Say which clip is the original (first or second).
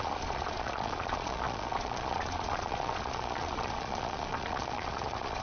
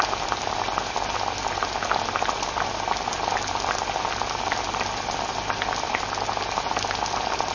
second